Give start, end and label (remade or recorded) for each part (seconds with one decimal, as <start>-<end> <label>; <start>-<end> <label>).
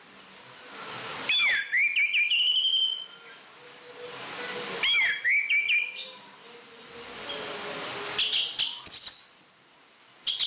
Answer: 0.0-10.5 recorded